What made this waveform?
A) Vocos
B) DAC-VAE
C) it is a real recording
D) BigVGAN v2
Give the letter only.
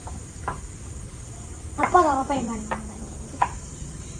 D